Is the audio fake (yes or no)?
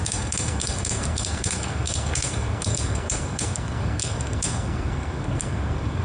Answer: yes